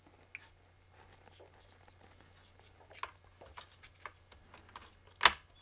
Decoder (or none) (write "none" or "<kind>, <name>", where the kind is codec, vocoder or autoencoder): none